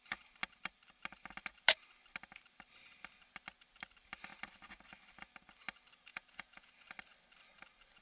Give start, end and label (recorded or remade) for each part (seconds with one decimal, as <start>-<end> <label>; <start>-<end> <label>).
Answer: 0.0-6.1 recorded; 6.1-6.7 remade; 6.7-8.0 recorded